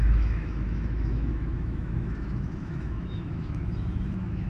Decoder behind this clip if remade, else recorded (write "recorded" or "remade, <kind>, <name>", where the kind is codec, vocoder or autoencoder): remade, autoencoder, DAC-VAE